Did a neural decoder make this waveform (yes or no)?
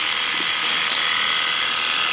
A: no